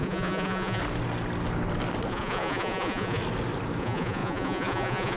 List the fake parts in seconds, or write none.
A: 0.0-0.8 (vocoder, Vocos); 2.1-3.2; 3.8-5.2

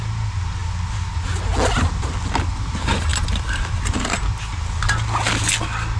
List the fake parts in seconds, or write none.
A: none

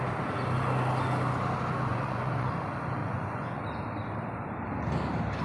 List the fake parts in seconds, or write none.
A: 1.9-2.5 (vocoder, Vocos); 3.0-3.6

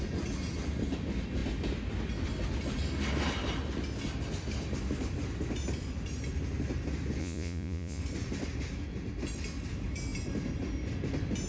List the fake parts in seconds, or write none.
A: 7.2-8.0 (vocoder, Vocos)

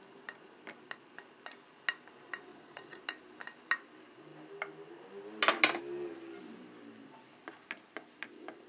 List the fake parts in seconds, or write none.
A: 2.5-3.0 (vocoder, Vocos)